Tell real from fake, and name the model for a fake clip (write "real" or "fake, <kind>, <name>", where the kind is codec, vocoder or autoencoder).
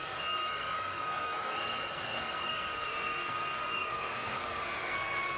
fake, codec, SNAC